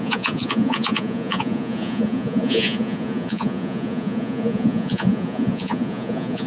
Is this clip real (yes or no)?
no